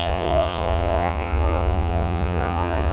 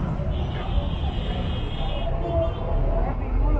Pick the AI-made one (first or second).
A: first